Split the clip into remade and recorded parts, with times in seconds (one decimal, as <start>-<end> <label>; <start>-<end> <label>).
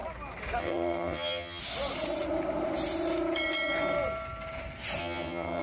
0.0-0.6 recorded; 0.6-1.6 remade; 1.6-5.0 recorded; 5.0-5.6 remade